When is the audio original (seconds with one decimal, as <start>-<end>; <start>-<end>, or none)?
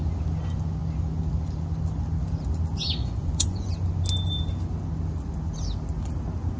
0.0-3.0; 3.7-6.6